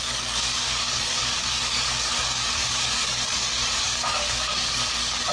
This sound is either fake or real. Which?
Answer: fake